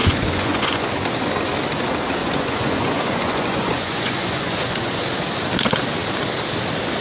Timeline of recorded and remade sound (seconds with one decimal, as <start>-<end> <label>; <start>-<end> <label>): 0.0-0.9 remade; 0.9-2.2 recorded; 2.2-5.0 remade; 5.0-7.0 recorded